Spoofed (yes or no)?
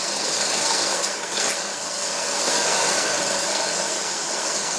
yes